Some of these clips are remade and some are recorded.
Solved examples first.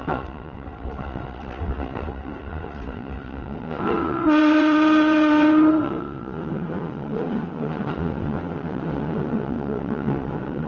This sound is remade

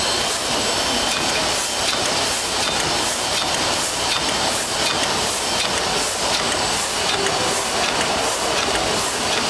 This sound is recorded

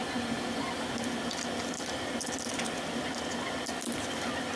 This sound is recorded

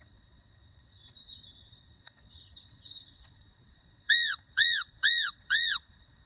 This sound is remade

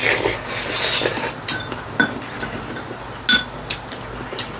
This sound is recorded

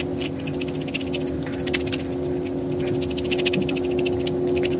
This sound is recorded